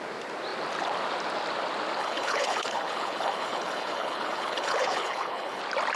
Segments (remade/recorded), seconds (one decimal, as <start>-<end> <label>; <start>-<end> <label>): 0.0-2.0 recorded; 2.0-5.6 remade; 5.6-6.0 recorded